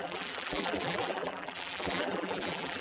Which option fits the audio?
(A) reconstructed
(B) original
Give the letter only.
A